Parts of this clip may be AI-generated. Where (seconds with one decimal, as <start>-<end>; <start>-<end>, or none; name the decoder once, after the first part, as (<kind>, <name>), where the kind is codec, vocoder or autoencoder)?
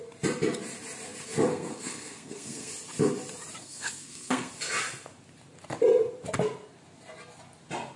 1.5-2.7 (codec, SNAC); 3.6-4.5